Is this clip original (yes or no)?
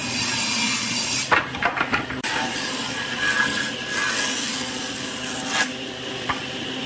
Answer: yes